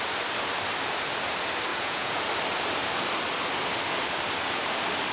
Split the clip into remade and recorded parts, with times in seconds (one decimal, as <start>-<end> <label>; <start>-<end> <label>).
0.0-1.7 recorded; 1.7-2.2 remade; 2.2-5.1 recorded